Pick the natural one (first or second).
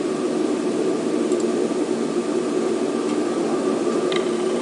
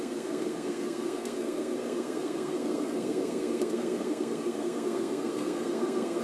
first